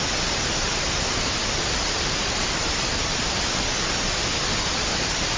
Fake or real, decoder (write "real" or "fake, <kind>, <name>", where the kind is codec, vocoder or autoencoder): real